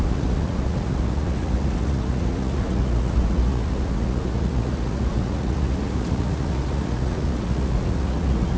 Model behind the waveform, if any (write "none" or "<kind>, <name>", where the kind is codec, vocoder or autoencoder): vocoder, Vocos